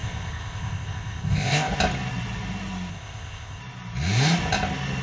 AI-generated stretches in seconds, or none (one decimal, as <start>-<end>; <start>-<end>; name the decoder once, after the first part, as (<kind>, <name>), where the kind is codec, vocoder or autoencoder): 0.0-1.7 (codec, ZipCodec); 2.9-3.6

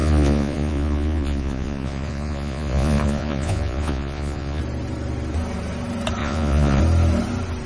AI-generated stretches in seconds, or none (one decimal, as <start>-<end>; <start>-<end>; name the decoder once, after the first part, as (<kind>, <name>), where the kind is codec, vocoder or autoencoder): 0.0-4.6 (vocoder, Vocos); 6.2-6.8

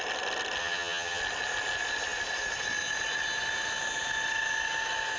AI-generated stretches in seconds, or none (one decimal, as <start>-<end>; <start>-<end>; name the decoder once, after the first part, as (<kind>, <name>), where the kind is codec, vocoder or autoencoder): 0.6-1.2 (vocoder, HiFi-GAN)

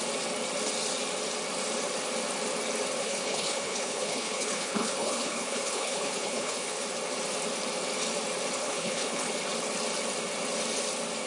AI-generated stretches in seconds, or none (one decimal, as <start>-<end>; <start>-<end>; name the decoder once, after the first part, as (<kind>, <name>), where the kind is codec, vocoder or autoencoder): 3.0-6.8 (codec, HILCodec); 8.6-9.3

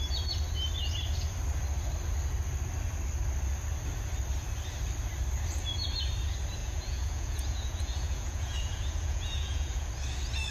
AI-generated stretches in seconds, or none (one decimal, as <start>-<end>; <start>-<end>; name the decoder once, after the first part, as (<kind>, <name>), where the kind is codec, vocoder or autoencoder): 6.6-9.9 (vocoder, Vocos)

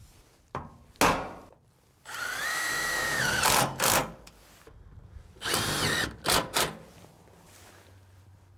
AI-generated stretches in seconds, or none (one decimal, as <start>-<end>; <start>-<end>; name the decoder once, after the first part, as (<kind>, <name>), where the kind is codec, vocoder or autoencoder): 2.5-3.4 (autoencoder, DAC-VAE)

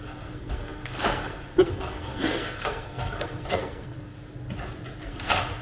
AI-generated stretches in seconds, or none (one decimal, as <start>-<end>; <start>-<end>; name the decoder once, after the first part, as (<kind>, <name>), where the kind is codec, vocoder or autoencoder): 0.0-4.1 (codec, SNAC); 5.0-5.6